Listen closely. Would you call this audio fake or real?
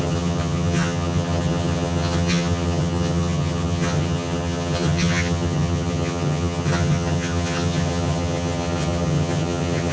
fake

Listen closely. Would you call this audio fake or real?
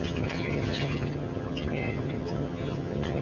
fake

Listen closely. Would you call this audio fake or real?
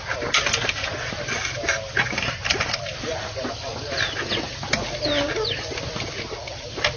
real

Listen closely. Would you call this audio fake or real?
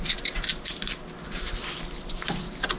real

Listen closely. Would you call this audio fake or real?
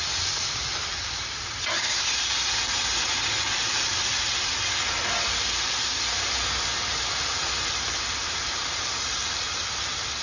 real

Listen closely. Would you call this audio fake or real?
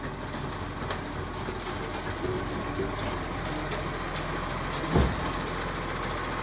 real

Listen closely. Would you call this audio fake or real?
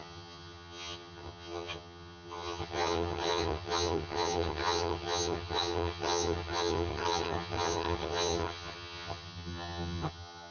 fake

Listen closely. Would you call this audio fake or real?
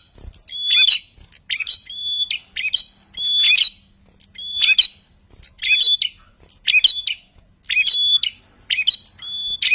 real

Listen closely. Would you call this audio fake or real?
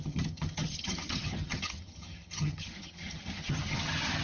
fake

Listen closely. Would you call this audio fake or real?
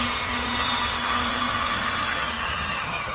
fake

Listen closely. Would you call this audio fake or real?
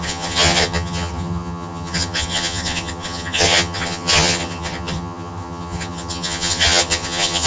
fake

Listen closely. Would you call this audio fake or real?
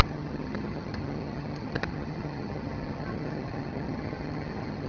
fake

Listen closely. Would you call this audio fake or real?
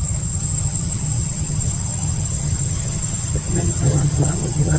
fake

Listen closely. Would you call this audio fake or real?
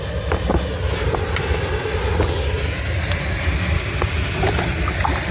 real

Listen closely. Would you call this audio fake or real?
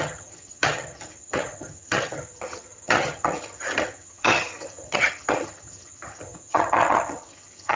fake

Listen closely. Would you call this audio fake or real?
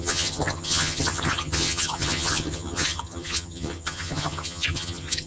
fake